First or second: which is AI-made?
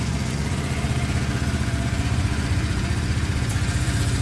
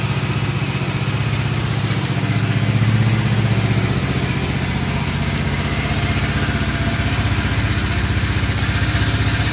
first